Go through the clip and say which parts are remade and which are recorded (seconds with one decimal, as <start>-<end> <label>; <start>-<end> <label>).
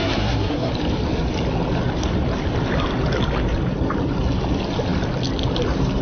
0.0-0.7 remade; 0.7-6.0 recorded